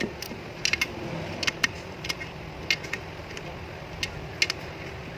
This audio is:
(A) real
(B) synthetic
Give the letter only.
A